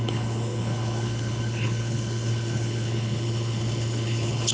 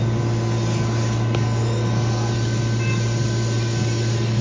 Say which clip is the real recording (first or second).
second